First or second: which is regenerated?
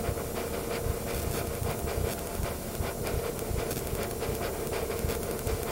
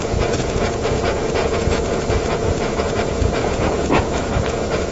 second